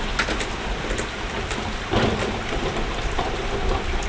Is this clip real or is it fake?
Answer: real